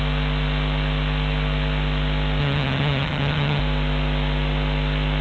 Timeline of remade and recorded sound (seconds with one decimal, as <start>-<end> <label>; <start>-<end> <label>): 0.0-2.4 recorded; 2.4-3.6 remade; 3.6-5.2 recorded

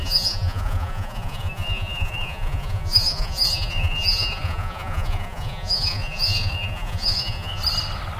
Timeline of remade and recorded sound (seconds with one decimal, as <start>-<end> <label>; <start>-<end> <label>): 0.0-7.6 remade; 7.6-8.2 recorded

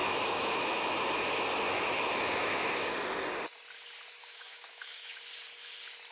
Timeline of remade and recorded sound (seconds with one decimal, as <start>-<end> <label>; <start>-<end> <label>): 0.0-0.9 remade; 0.9-1.7 recorded; 1.7-2.9 remade; 2.9-4.2 recorded; 4.2-5.2 remade; 5.2-6.1 recorded

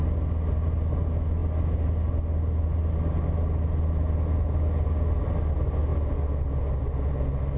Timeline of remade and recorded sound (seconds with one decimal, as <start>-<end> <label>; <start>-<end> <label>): 0.0-7.6 recorded

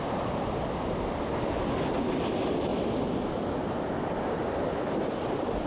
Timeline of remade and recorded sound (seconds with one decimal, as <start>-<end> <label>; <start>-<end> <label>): 0.0-5.7 recorded

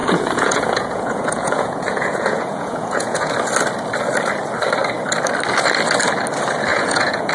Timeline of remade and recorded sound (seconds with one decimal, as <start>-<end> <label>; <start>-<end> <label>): 0.0-3.3 remade; 3.3-6.7 recorded; 6.7-7.3 remade

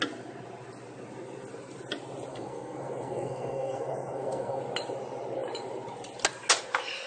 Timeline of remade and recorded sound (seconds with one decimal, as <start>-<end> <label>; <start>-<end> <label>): 0.0-2.3 recorded; 2.3-4.6 remade; 4.6-7.1 recorded

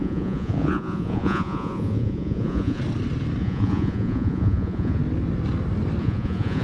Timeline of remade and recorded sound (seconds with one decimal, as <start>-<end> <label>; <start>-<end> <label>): 0.0-2.8 remade; 2.8-3.4 recorded; 3.4-5.0 remade; 5.0-6.0 recorded; 6.0-6.6 remade